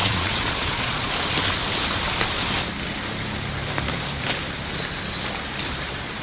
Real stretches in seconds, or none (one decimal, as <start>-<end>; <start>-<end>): 1.1-6.2